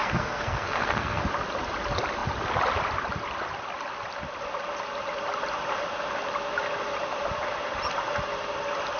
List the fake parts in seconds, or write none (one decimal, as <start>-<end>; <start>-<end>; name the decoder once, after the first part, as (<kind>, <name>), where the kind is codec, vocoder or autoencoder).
0.0-1.2 (codec, SNAC)